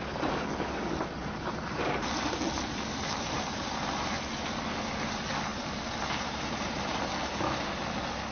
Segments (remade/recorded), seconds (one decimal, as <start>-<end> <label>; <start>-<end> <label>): 0.0-1.2 recorded; 1.2-1.9 remade; 1.9-5.5 recorded; 5.5-7.1 remade; 7.1-8.3 recorded